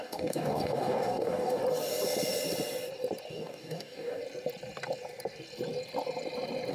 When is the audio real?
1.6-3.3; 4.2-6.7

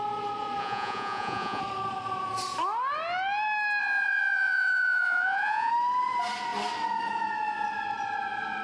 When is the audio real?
0.0-0.6; 1.6-3.8; 5.7-8.6

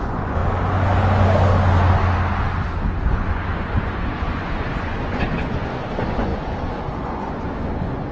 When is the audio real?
0.4-3.0

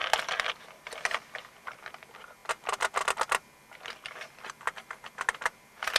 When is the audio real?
0.0-6.0

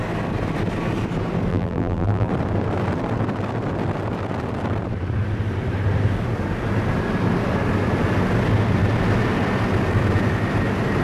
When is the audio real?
0.0-1.5; 2.3-11.0

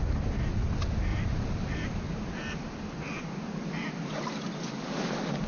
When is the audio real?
0.0-1.1; 4.3-5.5

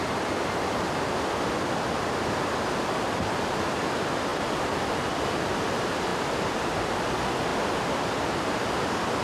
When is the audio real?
0.0-4.3; 5.5-6.1; 6.8-9.2

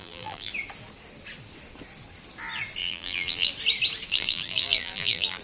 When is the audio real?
0.5-2.8; 3.5-4.1